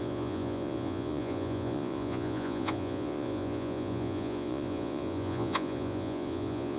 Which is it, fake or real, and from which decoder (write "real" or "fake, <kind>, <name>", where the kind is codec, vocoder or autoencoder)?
fake, vocoder, Vocos